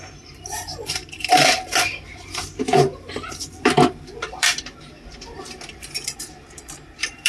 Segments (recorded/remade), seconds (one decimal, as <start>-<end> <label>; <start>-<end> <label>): 0.0-7.3 remade

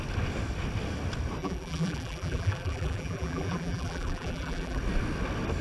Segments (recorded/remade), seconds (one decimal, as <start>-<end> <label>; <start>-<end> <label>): 0.0-1.4 recorded; 1.4-4.8 remade; 4.8-5.6 recorded

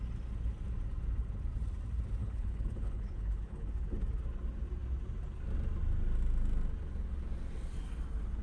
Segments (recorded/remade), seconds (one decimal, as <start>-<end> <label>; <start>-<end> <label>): 0.0-2.2 recorded; 2.2-3.7 remade; 3.7-8.4 recorded

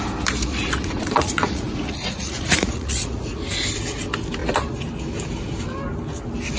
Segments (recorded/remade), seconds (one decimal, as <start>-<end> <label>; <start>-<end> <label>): 0.0-0.5 recorded; 0.5-3.4 remade; 3.4-6.6 recorded

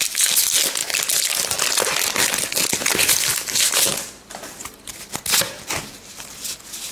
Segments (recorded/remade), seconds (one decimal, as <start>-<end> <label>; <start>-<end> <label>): 0.0-6.9 recorded